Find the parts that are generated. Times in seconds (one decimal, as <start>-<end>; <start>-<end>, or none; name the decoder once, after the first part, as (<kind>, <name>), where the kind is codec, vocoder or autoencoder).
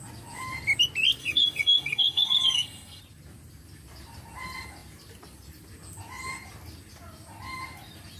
1.2-3.0 (codec, SNAC)